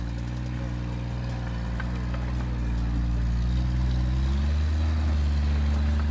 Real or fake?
real